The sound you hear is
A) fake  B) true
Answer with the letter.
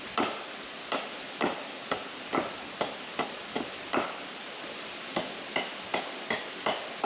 B